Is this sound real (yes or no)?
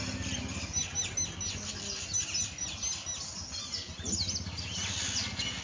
yes